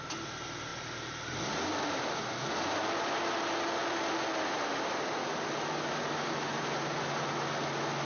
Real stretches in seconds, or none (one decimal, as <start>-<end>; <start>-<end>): 0.0-8.0